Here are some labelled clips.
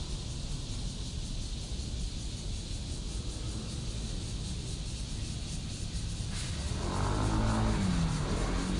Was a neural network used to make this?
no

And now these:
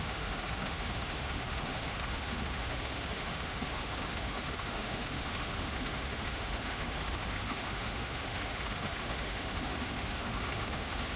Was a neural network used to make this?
yes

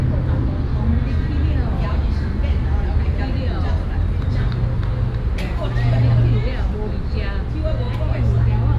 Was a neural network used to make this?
no